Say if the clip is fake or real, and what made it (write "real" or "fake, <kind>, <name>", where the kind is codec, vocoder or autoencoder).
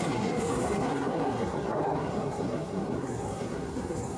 fake, codec, SNAC